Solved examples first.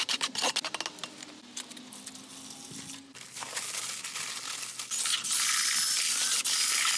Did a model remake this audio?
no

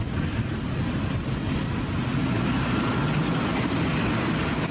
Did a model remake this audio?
no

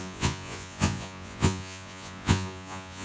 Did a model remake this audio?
yes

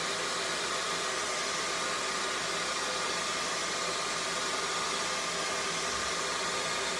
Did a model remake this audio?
no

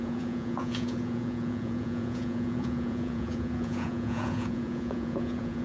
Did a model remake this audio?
yes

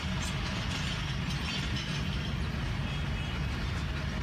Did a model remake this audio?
no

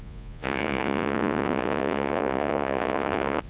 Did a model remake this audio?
yes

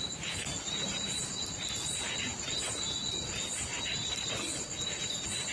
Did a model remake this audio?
no